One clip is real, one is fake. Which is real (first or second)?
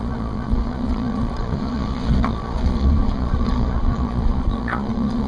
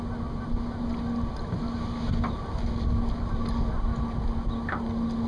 second